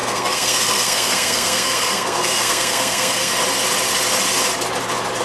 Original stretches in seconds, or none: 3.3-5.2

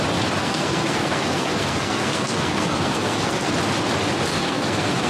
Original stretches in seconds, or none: 0.0-0.4; 3.5-4.3

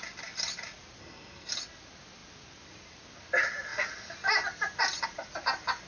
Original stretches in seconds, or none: 0.0-1.0; 1.5-5.9

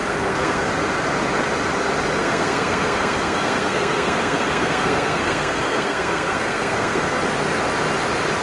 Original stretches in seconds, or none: 0.7-2.2; 7.2-8.4

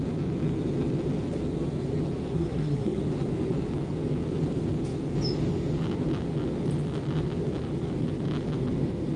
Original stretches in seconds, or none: 0.0-2.3; 3.0-9.2

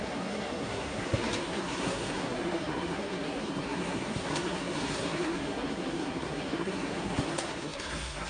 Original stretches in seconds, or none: none

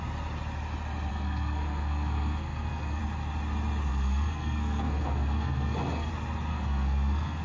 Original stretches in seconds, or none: 0.0-1.1; 3.0-3.9; 6.1-6.5